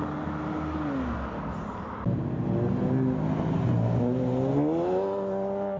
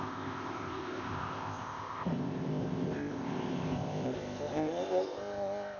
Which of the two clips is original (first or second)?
first